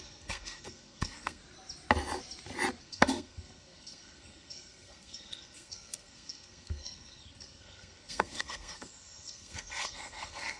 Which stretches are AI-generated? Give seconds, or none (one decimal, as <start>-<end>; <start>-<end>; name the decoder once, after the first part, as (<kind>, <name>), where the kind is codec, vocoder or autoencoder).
0.0-1.4 (codec, SNAC); 2.8-10.6